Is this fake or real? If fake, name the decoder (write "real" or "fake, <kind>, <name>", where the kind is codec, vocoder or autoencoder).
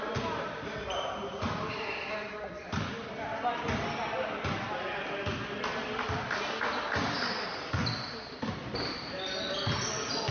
real